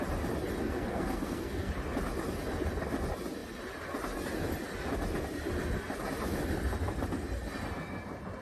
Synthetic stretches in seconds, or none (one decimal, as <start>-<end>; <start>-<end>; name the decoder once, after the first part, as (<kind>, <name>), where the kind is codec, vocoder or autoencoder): 0.6-1.7 (codec, SNAC)